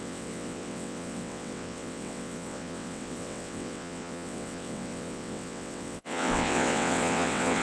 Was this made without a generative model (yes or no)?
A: no